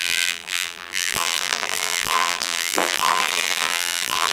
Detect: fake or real fake